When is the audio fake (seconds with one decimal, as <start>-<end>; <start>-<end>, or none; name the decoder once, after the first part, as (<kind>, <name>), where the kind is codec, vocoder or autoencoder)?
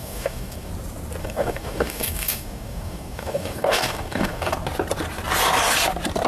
0.0-0.7 (codec, DAC); 1.2-4.5